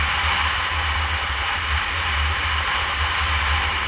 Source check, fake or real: real